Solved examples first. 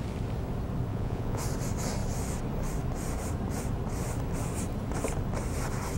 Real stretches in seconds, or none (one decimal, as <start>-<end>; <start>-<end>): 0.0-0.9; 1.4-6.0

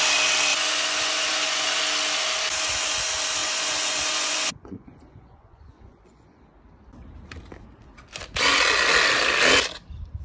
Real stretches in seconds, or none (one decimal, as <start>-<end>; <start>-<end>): 0.0-0.5; 1.8-3.4; 6.4-10.2

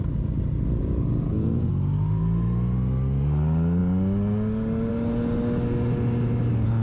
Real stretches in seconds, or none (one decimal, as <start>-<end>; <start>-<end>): 0.0-0.8; 1.7-6.8